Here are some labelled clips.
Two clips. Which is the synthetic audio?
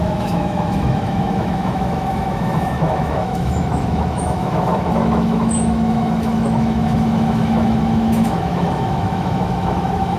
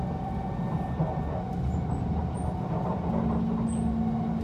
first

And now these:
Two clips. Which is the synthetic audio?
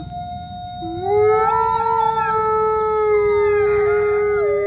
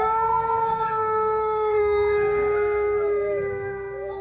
second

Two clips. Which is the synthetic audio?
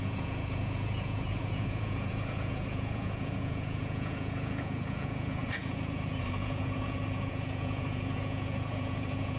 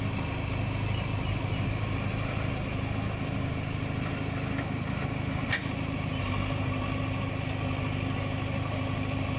first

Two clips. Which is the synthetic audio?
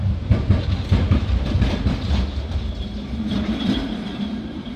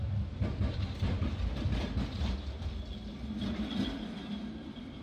first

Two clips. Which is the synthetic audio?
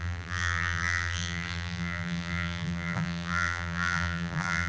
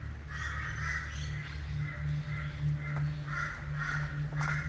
first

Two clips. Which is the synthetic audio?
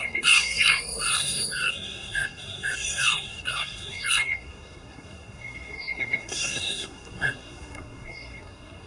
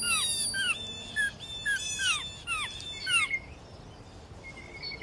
first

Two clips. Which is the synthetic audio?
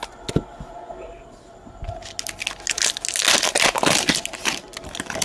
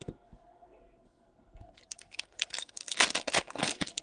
second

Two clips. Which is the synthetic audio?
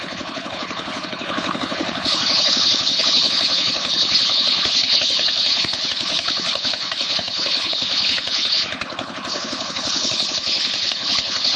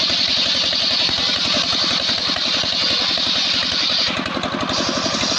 first